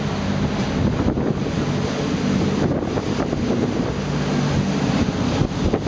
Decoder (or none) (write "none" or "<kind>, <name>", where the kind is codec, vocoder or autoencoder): none